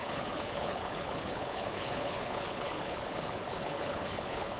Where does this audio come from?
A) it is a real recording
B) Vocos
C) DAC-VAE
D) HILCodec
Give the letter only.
D